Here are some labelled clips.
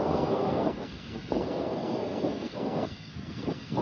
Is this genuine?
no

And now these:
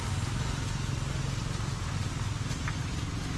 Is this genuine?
yes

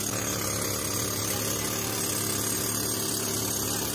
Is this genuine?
yes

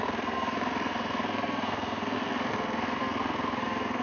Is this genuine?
no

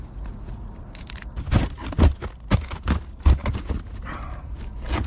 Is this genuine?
yes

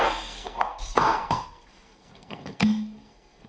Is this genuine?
no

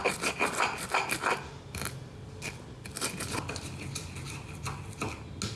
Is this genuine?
yes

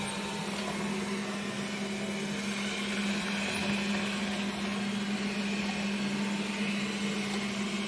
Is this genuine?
yes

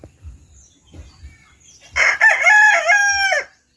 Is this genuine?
yes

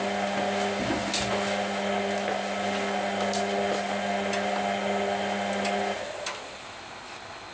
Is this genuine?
yes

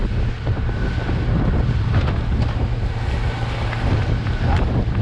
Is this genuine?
yes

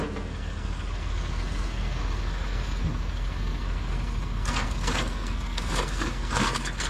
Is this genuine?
no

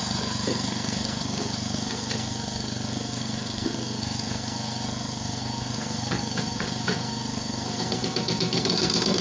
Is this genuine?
no